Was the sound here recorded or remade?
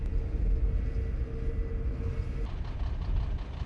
recorded